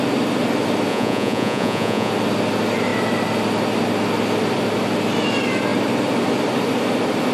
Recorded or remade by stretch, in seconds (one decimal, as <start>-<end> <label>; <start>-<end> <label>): 0.0-0.9 recorded; 0.9-2.1 remade; 2.1-7.3 recorded